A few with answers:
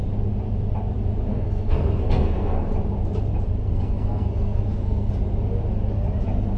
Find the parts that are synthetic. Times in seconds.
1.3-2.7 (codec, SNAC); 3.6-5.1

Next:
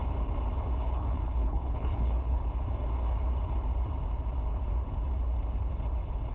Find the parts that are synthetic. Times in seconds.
0.8-2.4 (codec, HILCodec)